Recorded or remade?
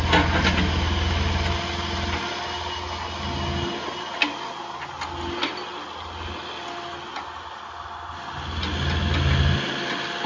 recorded